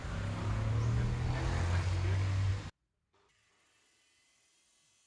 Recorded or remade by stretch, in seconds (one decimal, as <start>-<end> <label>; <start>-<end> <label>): 0.0-5.1 recorded